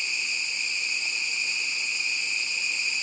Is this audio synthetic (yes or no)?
no